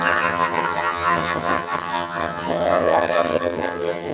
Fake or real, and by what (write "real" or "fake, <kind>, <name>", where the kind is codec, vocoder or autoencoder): fake, vocoder, HiFi-GAN